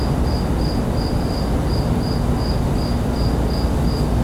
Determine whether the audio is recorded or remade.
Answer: recorded